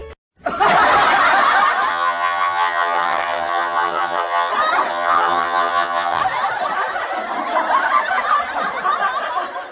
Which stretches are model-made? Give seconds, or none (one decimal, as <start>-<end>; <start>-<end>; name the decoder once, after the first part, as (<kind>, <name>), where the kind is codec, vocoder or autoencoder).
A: 1.9-4.5 (vocoder, HiFi-GAN); 4.9-6.2